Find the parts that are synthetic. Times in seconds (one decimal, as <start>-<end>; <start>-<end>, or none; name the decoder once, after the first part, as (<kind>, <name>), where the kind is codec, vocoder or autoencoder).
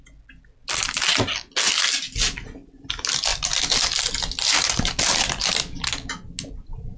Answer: none